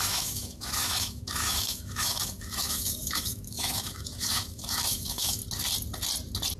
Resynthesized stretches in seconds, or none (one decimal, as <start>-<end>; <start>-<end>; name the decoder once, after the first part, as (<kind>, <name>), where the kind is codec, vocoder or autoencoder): 0.0-5.4 (autoencoder, DAC-VAE)